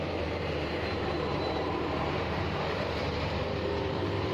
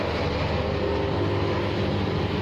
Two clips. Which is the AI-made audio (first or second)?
first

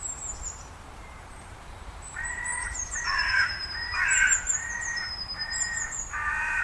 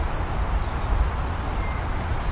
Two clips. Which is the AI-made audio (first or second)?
first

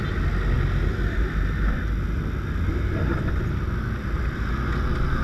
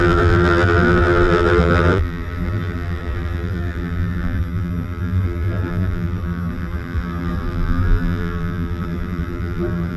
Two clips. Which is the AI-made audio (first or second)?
second